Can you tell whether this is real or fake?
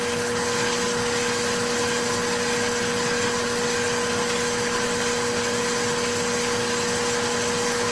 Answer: real